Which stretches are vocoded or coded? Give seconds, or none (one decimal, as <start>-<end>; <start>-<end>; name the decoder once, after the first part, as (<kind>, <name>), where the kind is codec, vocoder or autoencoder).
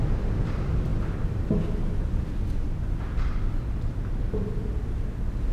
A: none